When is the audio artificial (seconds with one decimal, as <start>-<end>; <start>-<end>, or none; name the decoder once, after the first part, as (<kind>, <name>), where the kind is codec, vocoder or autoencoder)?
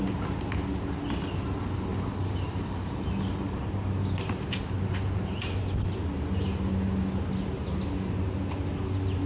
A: none